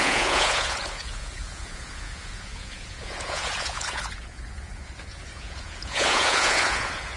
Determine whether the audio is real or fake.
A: fake